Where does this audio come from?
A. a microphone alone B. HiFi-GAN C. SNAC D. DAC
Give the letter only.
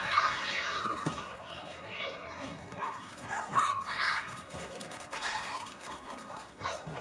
C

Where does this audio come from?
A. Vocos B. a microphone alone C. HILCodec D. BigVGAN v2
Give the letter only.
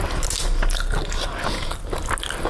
B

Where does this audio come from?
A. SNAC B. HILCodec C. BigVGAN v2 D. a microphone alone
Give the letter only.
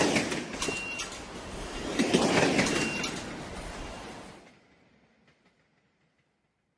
D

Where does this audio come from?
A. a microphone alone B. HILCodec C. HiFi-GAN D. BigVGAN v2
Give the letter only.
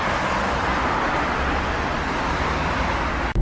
A